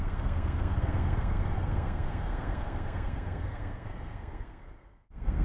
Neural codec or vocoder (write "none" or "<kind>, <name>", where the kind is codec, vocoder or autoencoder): codec, SNAC